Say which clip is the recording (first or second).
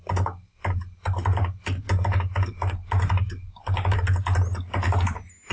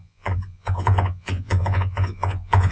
first